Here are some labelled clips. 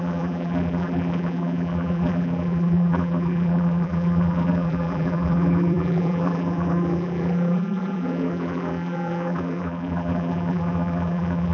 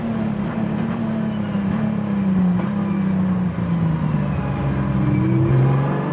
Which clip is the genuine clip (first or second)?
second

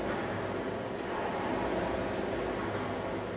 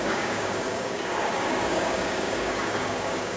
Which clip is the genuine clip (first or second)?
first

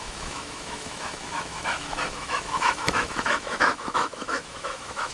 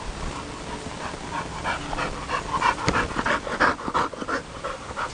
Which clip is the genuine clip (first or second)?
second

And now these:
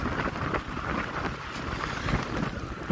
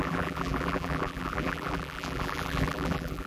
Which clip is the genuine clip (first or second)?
first